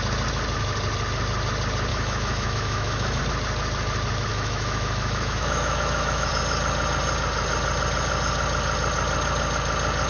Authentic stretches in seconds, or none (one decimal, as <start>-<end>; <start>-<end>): 0.0-1.9; 3.2-4.3; 6.3-10.1